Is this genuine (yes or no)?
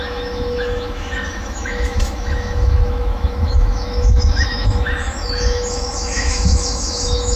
no